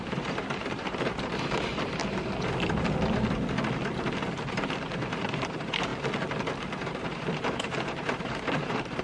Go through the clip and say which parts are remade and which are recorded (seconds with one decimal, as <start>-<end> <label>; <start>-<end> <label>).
0.0-2.0 remade; 2.0-4.5 recorded; 4.5-5.9 remade; 5.9-6.8 recorded; 6.8-9.0 remade

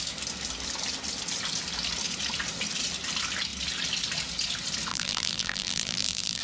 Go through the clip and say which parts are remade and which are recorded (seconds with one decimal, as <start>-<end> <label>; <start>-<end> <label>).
0.0-4.9 recorded; 4.9-6.4 remade